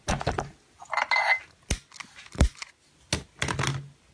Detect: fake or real real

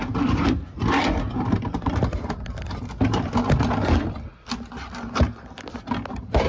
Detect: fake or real real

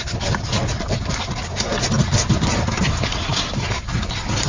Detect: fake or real real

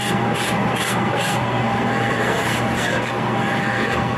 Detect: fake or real fake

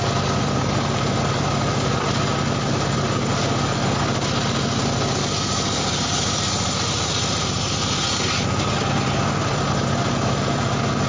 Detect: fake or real real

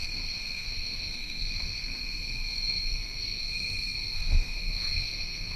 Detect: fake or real fake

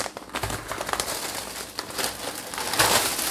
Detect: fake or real real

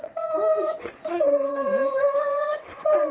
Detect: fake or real fake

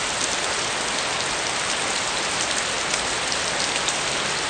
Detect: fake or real real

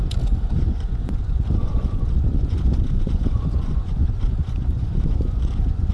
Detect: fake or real fake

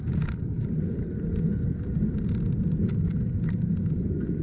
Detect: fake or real real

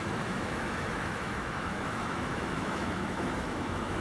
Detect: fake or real fake